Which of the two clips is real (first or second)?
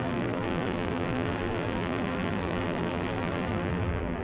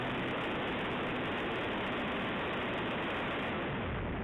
second